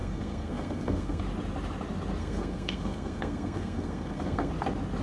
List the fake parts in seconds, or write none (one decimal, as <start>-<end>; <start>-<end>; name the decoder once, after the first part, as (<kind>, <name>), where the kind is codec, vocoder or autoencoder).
0.0-1.2 (codec, SNAC); 2.2-4.5